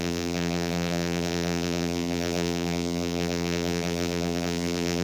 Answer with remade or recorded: remade